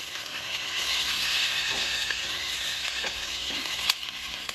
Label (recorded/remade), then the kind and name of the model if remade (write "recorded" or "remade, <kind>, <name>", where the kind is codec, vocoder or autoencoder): remade, codec, SNAC